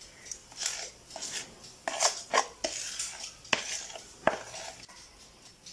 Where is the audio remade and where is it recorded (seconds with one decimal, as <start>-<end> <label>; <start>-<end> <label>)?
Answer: 0.0-5.7 recorded